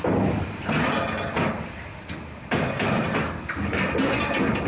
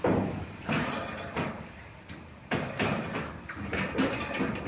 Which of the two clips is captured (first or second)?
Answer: first